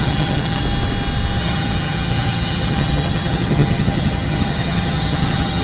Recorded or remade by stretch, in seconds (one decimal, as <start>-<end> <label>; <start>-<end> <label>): 0.0-0.6 remade; 0.6-1.4 recorded; 1.4-5.6 remade